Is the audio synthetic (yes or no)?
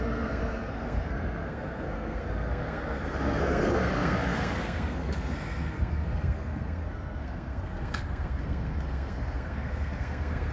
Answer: yes